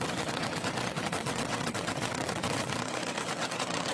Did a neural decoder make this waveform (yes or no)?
yes